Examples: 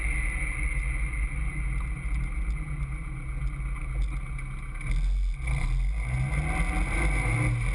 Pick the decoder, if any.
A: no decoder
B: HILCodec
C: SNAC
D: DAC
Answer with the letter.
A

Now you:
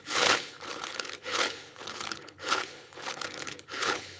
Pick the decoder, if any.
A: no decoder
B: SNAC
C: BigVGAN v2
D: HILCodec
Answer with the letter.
D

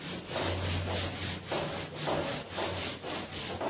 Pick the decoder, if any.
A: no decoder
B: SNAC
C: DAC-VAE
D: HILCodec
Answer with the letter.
A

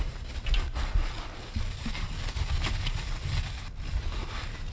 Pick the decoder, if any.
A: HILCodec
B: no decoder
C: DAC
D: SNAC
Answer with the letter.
B